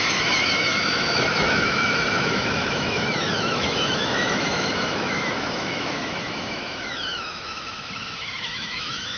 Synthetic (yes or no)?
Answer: yes